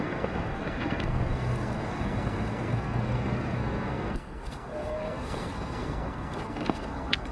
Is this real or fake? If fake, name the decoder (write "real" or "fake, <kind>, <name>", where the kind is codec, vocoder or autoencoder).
fake, codec, SNAC